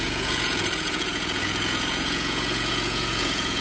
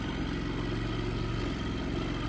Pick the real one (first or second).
second